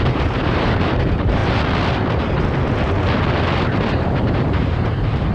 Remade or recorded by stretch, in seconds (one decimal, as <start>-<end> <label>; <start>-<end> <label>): 0.0-1.4 remade; 1.4-3.9 recorded; 3.9-5.3 remade